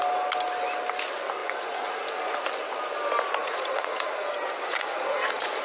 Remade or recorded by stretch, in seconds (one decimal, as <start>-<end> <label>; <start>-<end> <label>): 0.0-1.4 recorded; 1.4-2.0 remade; 2.0-3.4 recorded; 3.4-4.3 remade; 4.3-4.7 recorded; 4.7-5.6 remade